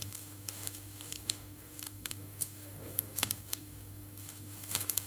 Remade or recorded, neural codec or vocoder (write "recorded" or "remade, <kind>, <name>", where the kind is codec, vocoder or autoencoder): remade, codec, DAC